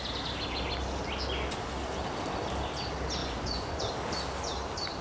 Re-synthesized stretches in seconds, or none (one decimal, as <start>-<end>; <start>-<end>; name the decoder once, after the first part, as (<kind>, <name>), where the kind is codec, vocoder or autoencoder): 3.2-3.8 (vocoder, Vocos)